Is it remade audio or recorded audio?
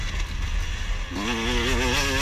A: recorded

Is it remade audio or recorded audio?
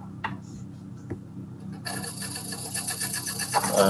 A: recorded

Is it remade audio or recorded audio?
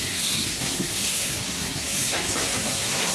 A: remade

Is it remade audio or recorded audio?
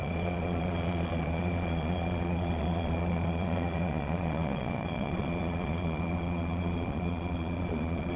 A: remade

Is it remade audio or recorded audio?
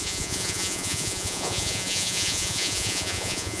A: remade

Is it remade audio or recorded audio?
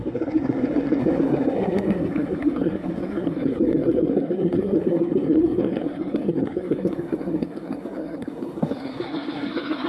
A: remade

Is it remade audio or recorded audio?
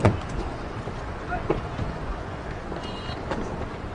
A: remade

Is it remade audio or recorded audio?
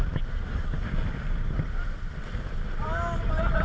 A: recorded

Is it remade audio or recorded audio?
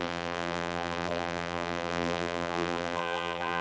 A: remade